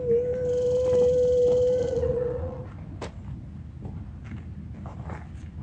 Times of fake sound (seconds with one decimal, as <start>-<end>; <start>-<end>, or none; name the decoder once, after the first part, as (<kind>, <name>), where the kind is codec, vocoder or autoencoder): 1.8-2.6 (vocoder, Vocos)